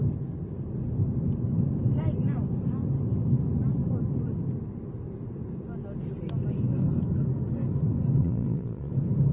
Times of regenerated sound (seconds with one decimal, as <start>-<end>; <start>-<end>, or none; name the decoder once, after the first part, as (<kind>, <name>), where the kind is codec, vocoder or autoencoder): 8.2-8.9 (vocoder, Vocos)